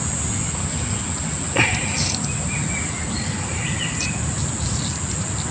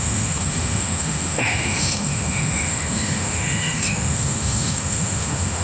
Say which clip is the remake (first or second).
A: second